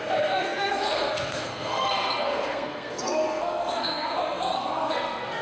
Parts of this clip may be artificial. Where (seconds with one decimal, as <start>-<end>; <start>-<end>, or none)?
0.0-5.4